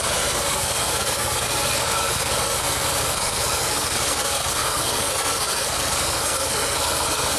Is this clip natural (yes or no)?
no